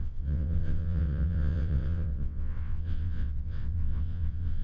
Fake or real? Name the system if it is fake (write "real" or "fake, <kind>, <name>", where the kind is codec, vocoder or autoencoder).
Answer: fake, vocoder, WaveNeXt